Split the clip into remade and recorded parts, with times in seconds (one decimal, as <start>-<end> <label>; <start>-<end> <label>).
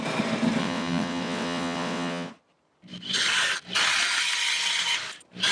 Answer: 0.0-0.6 recorded; 0.6-2.3 remade; 2.3-5.5 recorded